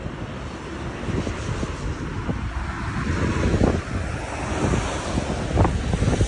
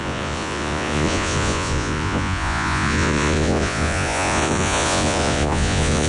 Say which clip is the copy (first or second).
second